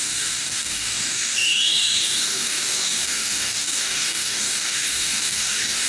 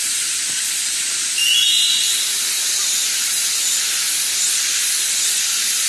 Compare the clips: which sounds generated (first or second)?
first